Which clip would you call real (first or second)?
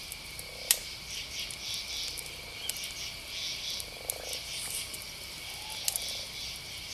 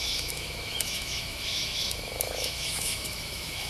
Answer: first